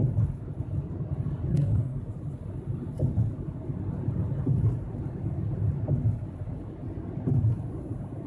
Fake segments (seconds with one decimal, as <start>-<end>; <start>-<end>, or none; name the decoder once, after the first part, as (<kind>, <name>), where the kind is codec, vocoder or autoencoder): 1.5-2.0 (codec, SNAC)